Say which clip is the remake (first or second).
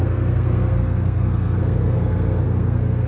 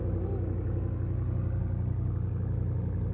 first